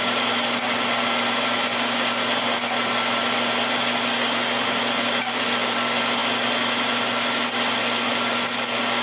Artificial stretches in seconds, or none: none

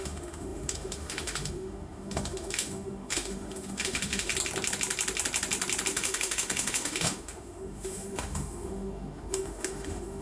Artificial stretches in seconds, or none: 0.0-4.3 (autoencoder, DAC-VAE); 5.9-10.2

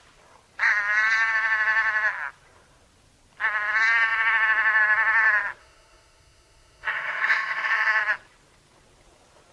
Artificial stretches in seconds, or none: 5.6-8.0 (autoencoder, DAC-VAE)